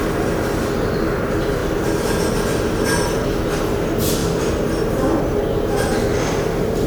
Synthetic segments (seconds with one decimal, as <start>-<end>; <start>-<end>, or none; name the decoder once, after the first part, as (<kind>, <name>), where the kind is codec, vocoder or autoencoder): none